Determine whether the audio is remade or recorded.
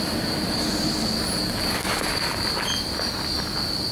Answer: recorded